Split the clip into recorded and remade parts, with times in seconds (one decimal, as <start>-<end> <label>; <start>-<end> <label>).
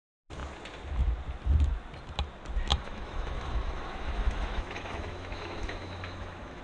0.0-2.7 recorded; 2.7-6.6 remade